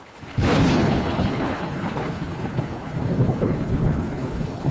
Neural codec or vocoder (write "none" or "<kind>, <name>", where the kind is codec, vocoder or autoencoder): codec, HILCodec